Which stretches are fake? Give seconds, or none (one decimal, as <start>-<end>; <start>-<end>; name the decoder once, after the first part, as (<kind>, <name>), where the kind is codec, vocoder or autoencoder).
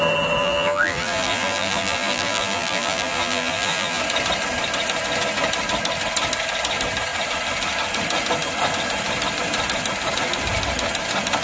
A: 0.4-4.0 (vocoder, BigVGAN v2)